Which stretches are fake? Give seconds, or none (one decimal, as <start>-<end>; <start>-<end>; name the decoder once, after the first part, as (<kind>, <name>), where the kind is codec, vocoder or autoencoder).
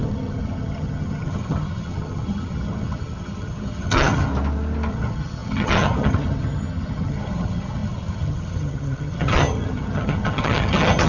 0.0-4.3 (vocoder, HiFi-GAN); 4.9-11.1